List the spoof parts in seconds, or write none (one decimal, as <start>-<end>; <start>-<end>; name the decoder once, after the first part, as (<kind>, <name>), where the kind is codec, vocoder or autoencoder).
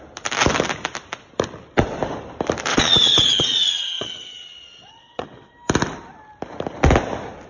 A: 2.7-5.5 (vocoder, WaveNeXt)